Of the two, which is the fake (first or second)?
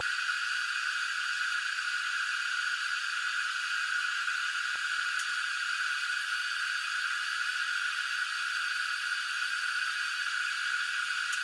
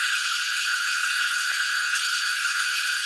second